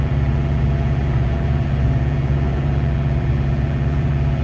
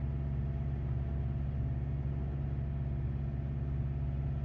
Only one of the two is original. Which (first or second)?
second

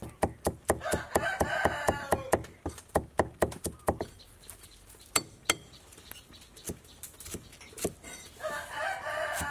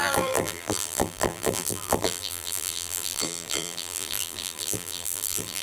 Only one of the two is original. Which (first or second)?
first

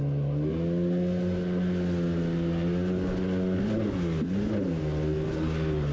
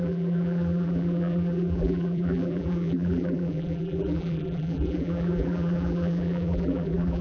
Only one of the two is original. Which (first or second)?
first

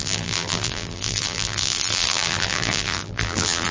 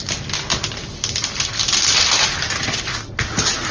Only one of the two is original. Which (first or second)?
second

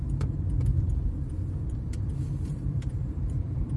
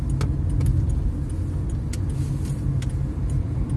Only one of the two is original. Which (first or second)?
second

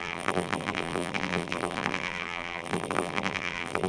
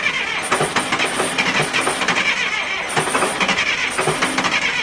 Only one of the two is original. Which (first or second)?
second